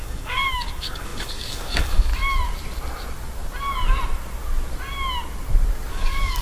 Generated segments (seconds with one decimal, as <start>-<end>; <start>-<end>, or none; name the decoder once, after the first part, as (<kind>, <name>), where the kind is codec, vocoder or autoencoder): 0.0-2.1 (codec, DAC); 5.9-6.4